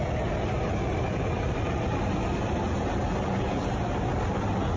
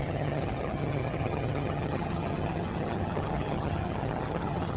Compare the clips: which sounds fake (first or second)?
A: second